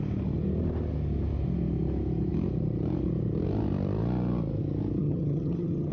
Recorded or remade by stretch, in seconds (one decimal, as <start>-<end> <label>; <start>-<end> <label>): 0.0-5.0 recorded; 5.0-5.9 remade